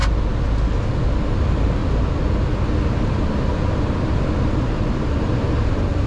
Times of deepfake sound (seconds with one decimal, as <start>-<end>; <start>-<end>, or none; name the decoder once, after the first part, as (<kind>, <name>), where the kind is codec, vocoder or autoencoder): 1.4-1.8 (vocoder, BigVGAN v2); 4.5-6.1